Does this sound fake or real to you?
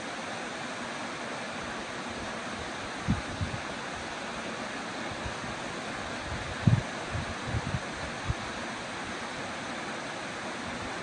real